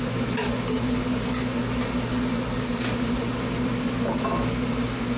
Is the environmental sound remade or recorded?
recorded